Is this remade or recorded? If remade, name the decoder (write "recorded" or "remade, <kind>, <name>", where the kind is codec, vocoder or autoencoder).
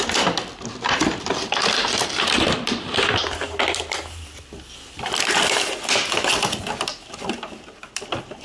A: recorded